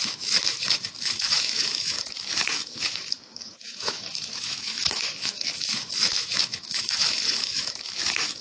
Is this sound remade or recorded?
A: remade